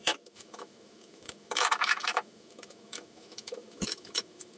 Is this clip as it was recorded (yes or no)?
no